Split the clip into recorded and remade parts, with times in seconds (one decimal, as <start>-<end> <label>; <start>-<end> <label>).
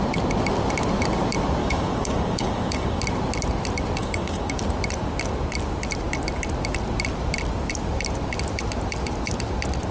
0.0-1.6 recorded; 1.6-3.0 remade; 3.0-4.0 recorded; 4.0-4.6 remade; 4.6-9.9 recorded